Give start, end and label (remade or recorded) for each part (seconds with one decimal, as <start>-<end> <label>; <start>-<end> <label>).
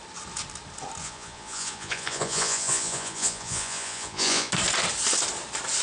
0.0-1.0 recorded; 1.0-4.5 remade; 4.5-5.8 recorded